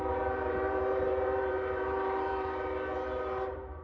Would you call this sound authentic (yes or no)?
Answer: no